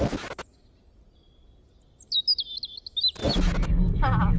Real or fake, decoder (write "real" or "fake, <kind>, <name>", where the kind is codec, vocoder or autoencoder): real